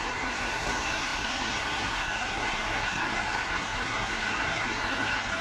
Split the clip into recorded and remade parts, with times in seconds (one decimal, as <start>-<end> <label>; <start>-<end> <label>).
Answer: 0.0-5.4 remade